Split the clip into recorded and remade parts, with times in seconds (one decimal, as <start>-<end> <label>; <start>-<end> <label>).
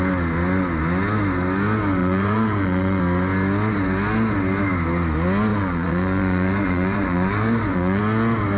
0.0-2.0 recorded; 2.0-3.0 remade; 3.0-5.5 recorded; 5.5-8.0 remade; 8.0-8.6 recorded